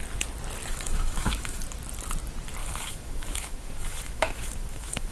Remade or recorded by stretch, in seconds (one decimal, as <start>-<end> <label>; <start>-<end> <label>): 0.0-0.7 recorded; 0.7-1.6 remade; 1.6-2.6 recorded; 2.6-5.1 remade